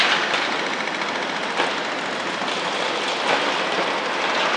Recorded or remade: recorded